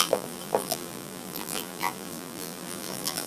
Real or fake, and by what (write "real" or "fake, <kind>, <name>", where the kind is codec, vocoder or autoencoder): fake, vocoder, BigVGAN v2